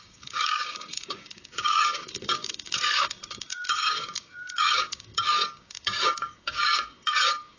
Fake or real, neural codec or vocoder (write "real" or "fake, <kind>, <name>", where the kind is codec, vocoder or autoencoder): fake, codec, DAC